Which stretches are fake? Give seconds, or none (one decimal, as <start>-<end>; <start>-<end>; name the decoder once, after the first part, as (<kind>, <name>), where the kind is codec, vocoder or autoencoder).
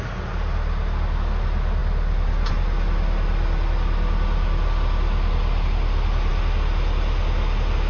none